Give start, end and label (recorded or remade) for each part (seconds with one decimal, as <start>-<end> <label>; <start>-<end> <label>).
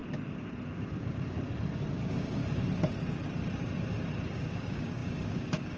0.0-1.9 recorded; 1.9-2.4 remade; 2.4-4.3 recorded; 4.3-5.8 remade